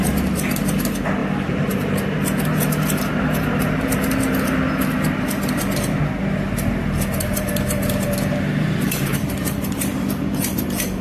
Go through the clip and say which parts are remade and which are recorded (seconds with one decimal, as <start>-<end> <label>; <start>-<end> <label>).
0.0-9.1 recorded; 9.1-11.0 remade